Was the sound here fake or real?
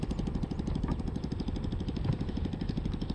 real